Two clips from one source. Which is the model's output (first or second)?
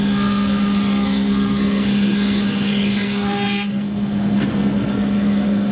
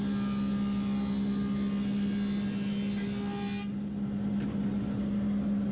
first